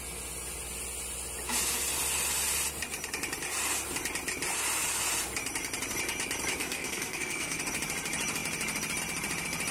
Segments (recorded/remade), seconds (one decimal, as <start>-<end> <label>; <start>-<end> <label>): 0.0-6.6 recorded; 6.6-7.6 remade; 7.6-9.7 recorded